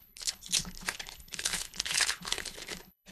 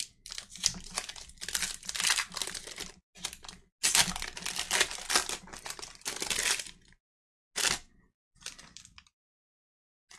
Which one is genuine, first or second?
second